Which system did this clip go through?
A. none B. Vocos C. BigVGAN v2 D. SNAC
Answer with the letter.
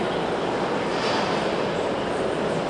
A